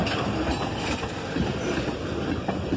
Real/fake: real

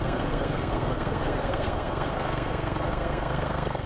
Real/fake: fake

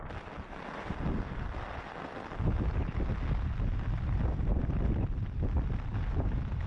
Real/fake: real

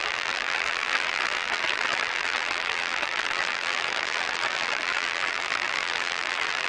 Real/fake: fake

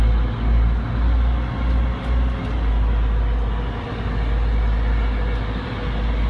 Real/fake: real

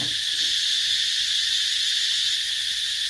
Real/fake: real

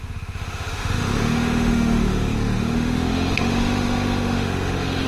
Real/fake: fake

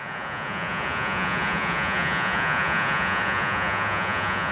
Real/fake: fake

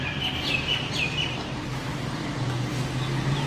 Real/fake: real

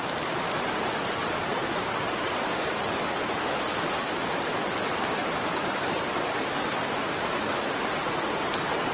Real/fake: real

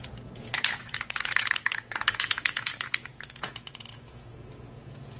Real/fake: fake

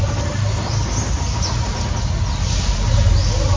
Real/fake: real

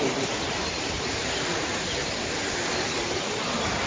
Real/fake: real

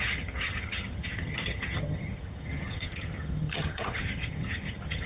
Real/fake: fake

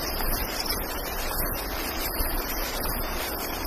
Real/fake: fake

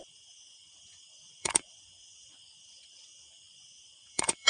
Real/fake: fake